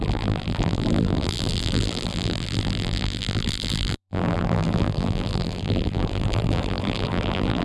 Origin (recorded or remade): remade